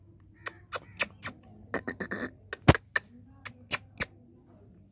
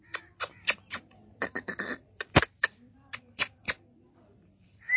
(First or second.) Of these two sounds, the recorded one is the first